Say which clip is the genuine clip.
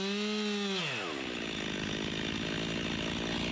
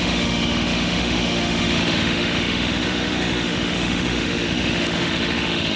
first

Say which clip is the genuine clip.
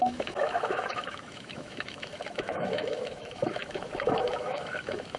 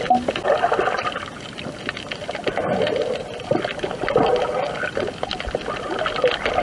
second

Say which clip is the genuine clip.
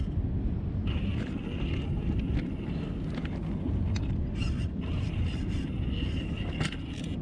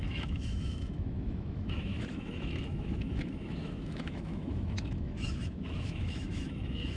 first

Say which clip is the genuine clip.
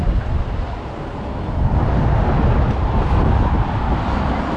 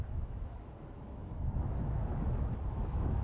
first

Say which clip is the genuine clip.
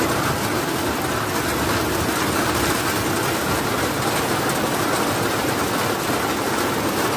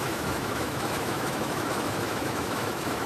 first